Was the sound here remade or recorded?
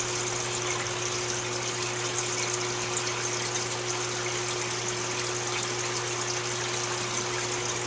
recorded